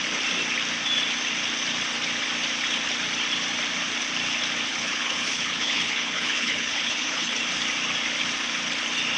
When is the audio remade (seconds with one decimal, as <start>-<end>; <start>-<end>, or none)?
4.7-7.4